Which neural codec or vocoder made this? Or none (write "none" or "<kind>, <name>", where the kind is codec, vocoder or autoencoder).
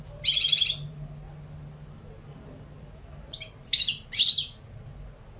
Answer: none